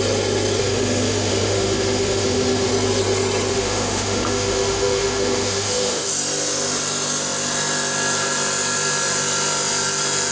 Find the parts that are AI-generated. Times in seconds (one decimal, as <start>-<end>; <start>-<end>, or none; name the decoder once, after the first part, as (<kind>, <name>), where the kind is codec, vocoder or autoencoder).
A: 0.6-2.7 (autoencoder, DAC-VAE); 3.5-6.1